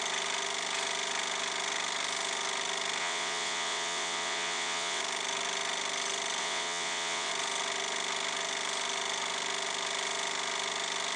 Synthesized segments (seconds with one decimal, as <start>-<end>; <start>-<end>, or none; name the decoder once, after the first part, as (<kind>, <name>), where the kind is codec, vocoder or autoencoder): 3.0-5.0 (vocoder, WaveNeXt); 6.4-7.3

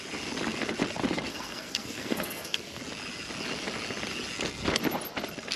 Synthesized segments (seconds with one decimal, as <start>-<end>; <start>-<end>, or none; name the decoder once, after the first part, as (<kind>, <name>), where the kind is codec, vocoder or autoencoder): 1.3-2.8 (codec, SNAC)

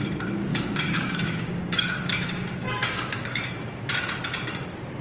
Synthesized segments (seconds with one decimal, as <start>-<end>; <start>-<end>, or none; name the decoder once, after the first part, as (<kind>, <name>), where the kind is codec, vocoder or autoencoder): 0.5-3.5 (codec, DAC)